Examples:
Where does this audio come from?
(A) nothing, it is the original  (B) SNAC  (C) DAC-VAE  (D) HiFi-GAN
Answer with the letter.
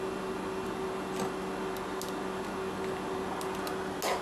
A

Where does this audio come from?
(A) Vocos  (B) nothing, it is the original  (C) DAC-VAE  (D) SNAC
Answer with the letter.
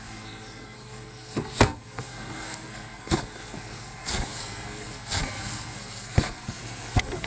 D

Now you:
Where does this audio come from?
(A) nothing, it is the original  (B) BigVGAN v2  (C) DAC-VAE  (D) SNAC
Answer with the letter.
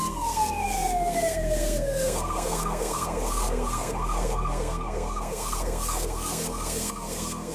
D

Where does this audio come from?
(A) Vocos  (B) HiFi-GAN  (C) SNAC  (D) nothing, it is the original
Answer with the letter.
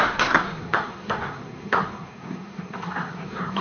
C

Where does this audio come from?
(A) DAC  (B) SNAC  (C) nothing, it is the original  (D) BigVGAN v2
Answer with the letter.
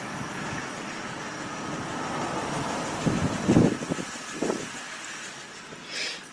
C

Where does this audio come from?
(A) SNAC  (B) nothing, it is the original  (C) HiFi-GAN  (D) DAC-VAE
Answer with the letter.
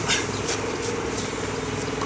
B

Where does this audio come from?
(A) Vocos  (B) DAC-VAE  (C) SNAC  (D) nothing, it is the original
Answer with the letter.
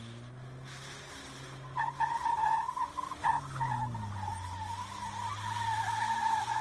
D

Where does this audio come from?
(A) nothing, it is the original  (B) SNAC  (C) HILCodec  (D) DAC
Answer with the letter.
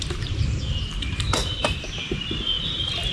A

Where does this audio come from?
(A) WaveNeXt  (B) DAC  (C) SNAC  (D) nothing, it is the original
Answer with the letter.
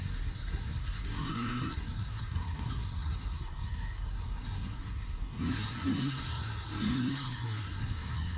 C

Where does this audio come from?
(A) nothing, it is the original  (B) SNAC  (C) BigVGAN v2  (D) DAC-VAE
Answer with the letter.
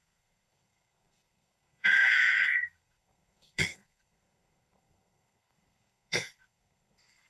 B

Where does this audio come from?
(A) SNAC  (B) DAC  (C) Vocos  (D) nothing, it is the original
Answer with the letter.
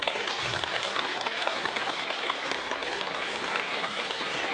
A